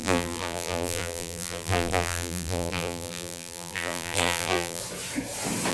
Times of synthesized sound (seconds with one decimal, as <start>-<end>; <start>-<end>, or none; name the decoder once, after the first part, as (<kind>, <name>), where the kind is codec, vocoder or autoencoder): 0.0-4.8 (vocoder, BigVGAN v2)